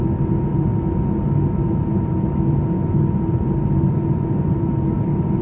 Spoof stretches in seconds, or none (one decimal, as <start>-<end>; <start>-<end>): 0.0-5.4